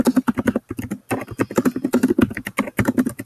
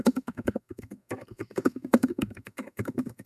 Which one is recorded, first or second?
first